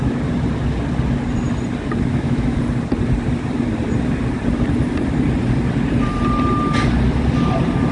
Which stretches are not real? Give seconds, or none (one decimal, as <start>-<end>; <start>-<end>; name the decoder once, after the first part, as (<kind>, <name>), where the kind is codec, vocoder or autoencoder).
2.1-2.6 (autoencoder, DAC-VAE)